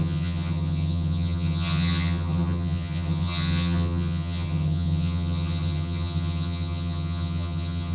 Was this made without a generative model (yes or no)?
no